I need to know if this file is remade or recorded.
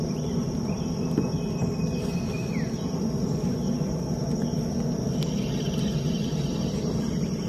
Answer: recorded